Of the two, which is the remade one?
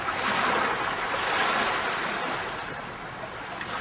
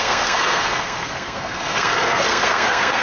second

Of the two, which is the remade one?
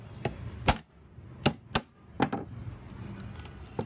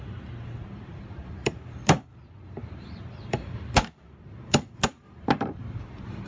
second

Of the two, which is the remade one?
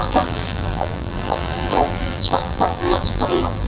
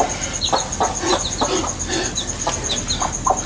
first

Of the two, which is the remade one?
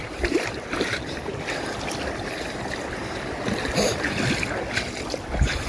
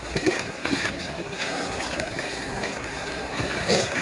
second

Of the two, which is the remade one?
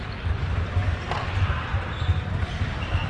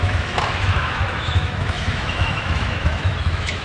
second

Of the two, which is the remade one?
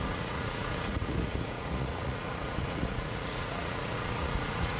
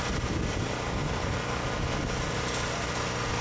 first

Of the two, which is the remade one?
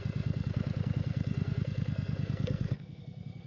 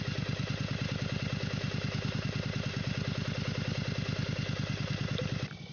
first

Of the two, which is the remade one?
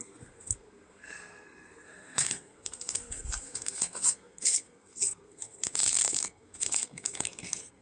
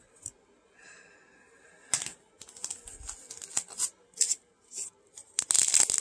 first